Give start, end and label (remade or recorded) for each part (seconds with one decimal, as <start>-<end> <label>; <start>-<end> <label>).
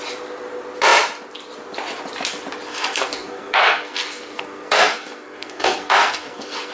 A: 0.0-2.7 recorded; 2.7-6.7 remade